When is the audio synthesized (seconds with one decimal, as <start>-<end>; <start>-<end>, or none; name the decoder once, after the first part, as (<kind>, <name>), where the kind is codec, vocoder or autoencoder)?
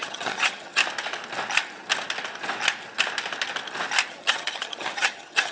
0.0-0.8 (vocoder, HiFi-GAN); 4.1-5.5